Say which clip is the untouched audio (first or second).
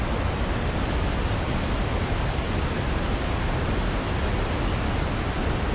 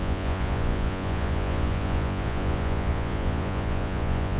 first